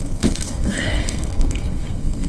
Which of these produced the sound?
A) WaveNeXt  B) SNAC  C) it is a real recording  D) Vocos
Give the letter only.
B